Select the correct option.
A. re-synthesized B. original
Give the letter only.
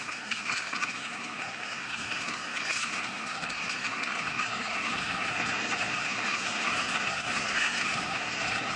A